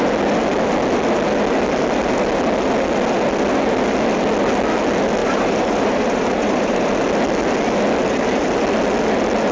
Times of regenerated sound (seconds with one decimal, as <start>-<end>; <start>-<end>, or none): 5.2-6.9; 8.0-8.5